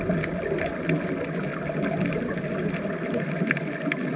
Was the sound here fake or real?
real